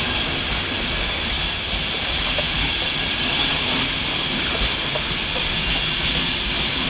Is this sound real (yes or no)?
yes